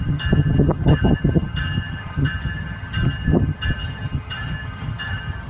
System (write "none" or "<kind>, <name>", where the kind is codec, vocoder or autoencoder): vocoder, HiFi-GAN